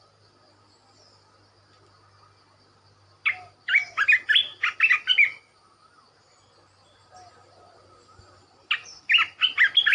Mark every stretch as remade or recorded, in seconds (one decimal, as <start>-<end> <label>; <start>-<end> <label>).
0.0-9.9 recorded